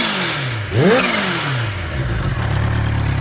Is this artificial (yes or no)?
no